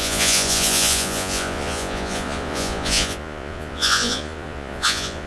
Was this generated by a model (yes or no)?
yes